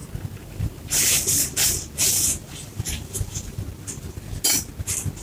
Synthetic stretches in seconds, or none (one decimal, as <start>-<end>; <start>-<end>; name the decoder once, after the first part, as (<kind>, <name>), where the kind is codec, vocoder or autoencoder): 0.0-1.1 (vocoder, BigVGAN v2)